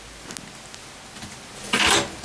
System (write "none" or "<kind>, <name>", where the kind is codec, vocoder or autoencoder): none